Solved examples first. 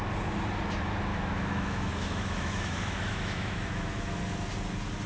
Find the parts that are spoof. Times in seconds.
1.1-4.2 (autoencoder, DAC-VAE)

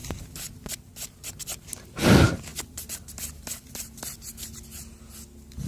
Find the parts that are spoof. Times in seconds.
none

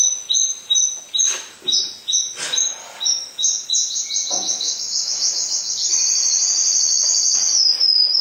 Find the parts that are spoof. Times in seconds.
2.8-3.7 (codec, DAC); 4.5-5.9

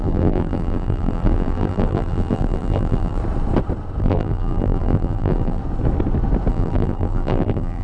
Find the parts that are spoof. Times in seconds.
0.0-3.2 (vocoder, BigVGAN v2); 4.0-5.6; 6.5-7.8

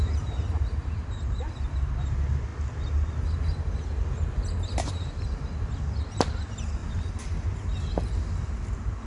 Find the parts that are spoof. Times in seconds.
6.8-7.9 (vocoder, BigVGAN v2)